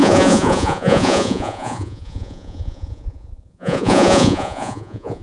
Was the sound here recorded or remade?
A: remade